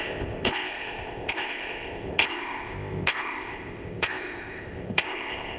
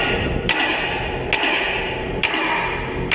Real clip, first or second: second